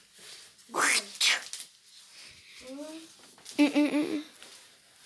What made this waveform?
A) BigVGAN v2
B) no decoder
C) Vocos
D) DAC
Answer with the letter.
B